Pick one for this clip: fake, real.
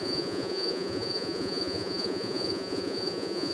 fake